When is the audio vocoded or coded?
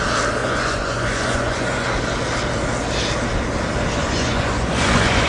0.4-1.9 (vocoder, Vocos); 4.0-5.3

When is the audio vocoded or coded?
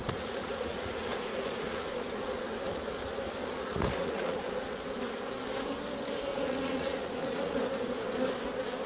0.0-2.4 (vocoder, Vocos); 3.4-4.8; 6.3-7.6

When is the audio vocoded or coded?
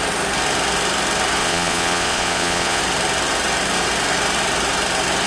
1.4-2.8 (vocoder, Vocos)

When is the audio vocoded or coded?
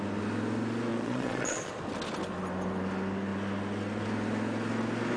0.9-1.7 (vocoder, Vocos)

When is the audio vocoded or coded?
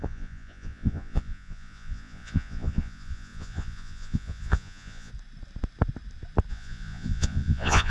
0.0-5.1 (vocoder, Vocos); 6.5-7.9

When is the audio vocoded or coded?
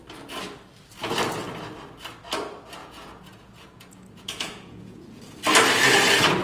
2.8-5.2 (vocoder, Vocos)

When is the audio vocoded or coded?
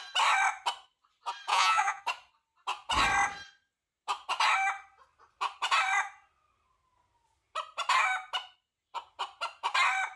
1.5-2.0 (vocoder, Vocos)